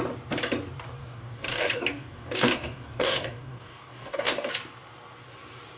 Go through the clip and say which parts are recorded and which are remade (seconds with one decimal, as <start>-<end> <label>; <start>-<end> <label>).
0.0-1.0 recorded; 1.0-4.5 remade; 4.5-5.8 recorded